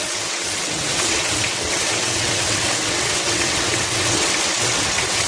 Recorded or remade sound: remade